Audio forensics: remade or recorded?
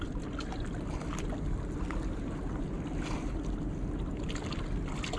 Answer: recorded